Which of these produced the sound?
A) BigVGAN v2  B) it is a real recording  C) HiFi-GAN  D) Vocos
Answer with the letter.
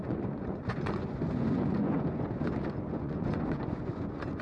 D